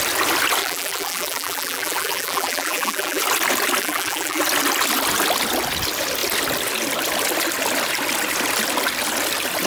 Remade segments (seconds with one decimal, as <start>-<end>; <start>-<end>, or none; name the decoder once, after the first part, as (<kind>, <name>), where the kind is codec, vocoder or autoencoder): 0.6-3.2 (vocoder, BigVGAN v2); 3.8-4.4

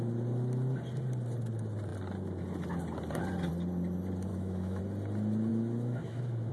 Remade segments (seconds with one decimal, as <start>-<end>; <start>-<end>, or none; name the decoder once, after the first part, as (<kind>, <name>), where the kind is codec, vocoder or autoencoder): 4.3-4.8 (autoencoder, DAC-VAE); 5.5-6.5

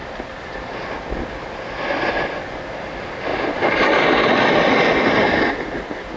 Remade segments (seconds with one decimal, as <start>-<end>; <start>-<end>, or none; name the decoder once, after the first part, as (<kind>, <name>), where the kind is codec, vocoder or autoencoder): 0.0-1.3 (vocoder, BigVGAN v2); 3.3-4.7

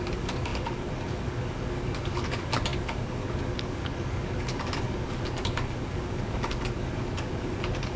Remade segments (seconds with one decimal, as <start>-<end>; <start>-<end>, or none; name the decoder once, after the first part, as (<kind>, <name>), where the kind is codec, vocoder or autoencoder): 0.0-8.0 (codec, DAC)

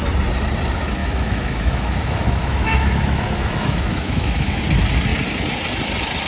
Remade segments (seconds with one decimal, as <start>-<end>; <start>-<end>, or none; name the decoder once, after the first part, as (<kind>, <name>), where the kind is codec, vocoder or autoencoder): 1.0-4.6 (autoencoder, DAC-VAE)

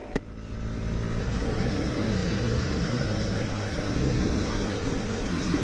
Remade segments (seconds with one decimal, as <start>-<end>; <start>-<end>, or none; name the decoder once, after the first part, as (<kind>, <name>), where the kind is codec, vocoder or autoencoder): 1.2-5.6 (codec, SNAC)